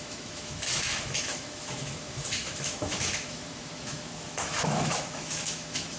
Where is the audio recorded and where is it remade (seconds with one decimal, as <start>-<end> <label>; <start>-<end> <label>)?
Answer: 0.0-6.0 remade